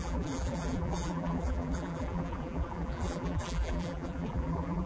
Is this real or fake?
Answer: fake